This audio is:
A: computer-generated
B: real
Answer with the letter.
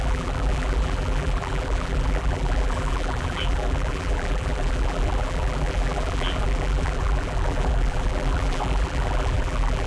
A